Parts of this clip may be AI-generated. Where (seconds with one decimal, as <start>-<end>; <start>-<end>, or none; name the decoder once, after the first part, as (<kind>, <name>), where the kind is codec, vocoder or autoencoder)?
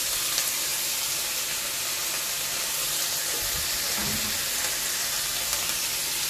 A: 0.0-0.7 (vocoder, BigVGAN v2); 3.4-6.3